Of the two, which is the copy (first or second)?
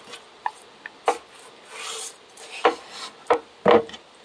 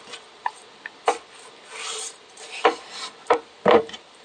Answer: second